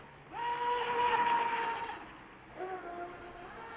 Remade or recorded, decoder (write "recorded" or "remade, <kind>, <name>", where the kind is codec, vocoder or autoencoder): recorded